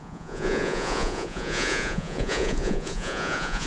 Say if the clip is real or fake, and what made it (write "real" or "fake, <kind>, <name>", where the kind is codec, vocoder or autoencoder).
fake, vocoder, Vocos